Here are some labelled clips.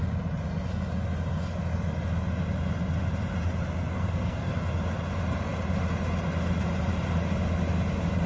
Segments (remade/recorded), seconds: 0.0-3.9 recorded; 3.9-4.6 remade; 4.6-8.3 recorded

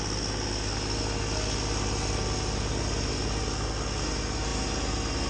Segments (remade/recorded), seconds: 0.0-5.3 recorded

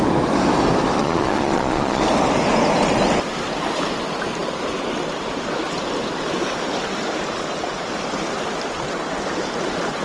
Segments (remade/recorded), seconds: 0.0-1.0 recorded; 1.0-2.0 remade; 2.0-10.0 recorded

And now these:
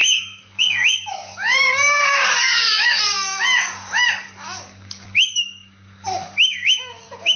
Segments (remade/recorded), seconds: 0.0-7.4 remade

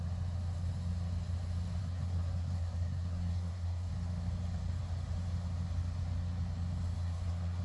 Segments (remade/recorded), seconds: 0.0-1.8 recorded; 1.8-3.9 remade; 3.9-7.0 recorded; 7.0-7.6 remade

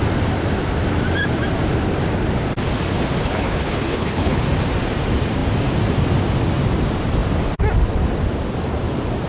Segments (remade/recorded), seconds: 0.0-3.2 recorded; 3.2-4.4 remade; 4.4-9.3 recorded